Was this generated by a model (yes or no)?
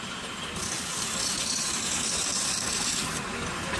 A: no